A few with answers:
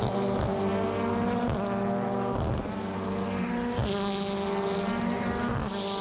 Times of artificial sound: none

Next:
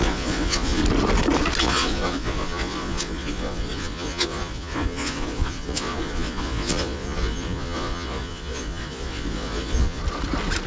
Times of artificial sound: 0.0-0.8 (vocoder, Vocos); 1.6-10.0

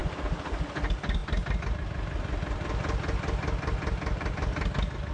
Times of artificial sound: none

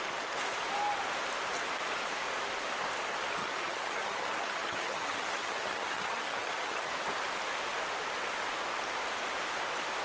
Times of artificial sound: 3.4-6.9 (vocoder, HiFi-GAN)